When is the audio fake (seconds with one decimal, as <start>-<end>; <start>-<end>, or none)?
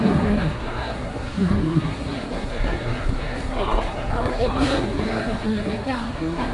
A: 0.0-6.5